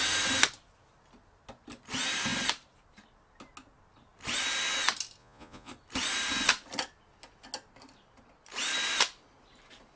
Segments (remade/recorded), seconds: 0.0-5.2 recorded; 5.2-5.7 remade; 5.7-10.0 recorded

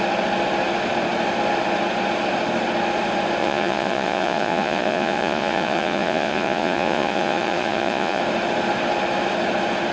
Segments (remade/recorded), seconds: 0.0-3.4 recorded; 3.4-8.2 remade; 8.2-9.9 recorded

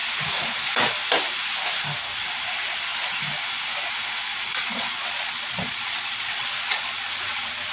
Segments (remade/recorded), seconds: 0.0-4.6 recorded; 4.6-7.7 remade

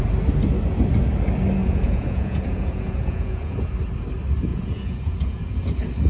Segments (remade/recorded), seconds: 0.0-1.6 recorded; 1.6-3.7 remade; 3.7-4.5 recorded; 4.5-5.6 remade; 5.6-6.1 recorded